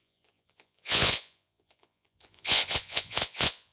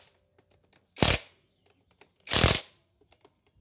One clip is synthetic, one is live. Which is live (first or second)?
second